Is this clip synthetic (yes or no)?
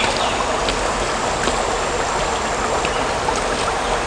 no